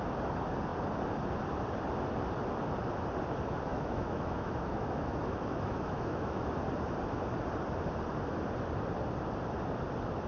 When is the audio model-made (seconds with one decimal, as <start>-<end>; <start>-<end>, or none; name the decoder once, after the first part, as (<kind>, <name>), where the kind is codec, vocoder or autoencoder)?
3.7-6.5 (autoencoder, DAC-VAE)